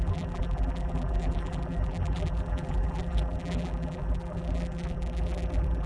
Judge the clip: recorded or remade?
remade